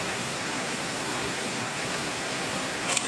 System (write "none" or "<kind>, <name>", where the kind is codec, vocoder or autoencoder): codec, SNAC